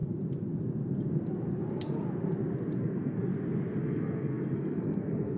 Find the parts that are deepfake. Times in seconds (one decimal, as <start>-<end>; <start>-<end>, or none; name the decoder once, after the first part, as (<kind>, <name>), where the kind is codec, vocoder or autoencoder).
2.8-3.3 (codec, SNAC); 3.8-5.4